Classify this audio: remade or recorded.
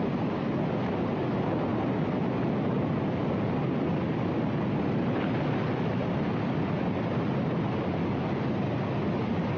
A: recorded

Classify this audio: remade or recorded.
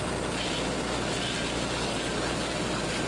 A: recorded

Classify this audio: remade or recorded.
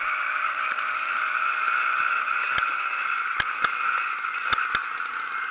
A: recorded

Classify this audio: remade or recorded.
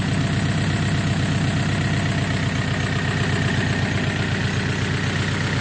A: recorded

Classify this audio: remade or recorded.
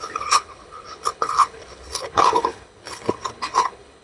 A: remade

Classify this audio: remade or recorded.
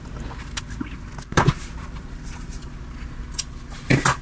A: recorded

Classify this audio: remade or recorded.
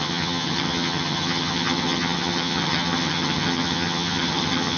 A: remade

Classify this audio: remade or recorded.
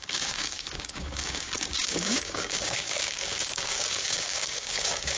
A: remade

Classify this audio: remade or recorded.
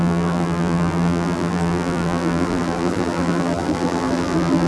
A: remade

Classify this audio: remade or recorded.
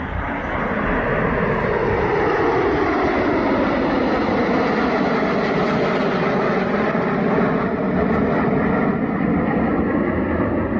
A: recorded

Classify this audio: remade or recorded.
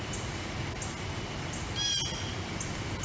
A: recorded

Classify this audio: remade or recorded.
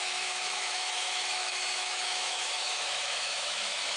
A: remade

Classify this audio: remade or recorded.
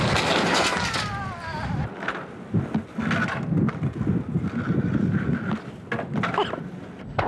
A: recorded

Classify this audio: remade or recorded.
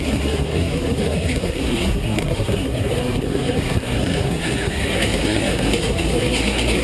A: remade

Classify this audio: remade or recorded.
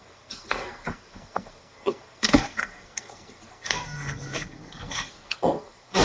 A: remade